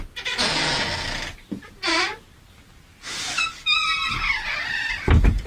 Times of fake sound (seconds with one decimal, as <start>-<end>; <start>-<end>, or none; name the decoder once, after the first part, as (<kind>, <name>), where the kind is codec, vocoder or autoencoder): none